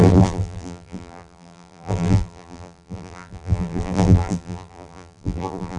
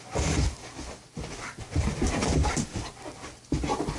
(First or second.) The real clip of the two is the second